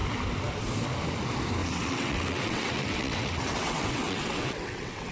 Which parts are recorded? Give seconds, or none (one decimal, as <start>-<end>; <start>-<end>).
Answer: 0.0-1.6